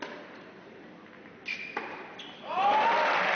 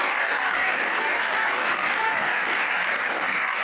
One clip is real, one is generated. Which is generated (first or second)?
second